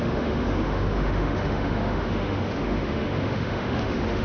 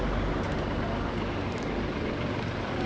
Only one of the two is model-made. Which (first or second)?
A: first